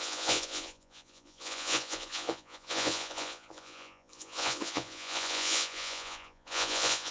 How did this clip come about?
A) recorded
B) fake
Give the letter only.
B